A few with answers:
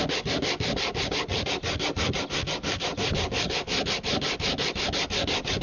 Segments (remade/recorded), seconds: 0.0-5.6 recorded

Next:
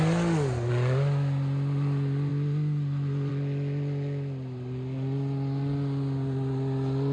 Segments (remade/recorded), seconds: 0.0-7.1 recorded

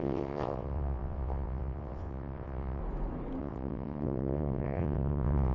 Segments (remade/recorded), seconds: 0.0-2.8 remade; 2.8-3.4 recorded; 3.4-5.5 remade

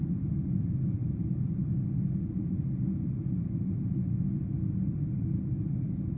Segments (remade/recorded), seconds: 0.0-6.2 recorded

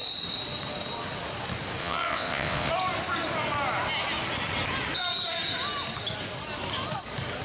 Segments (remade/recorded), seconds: 0.0-1.8 recorded; 1.8-2.7 remade; 2.7-7.4 recorded

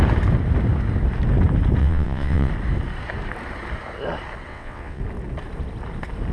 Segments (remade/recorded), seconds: 0.0-1.8 recorded; 1.8-2.5 remade; 2.5-4.5 recorded; 4.5-5.0 remade; 5.0-6.3 recorded